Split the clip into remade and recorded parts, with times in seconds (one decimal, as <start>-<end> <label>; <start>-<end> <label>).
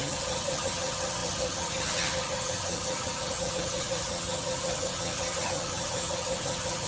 0.0-6.9 remade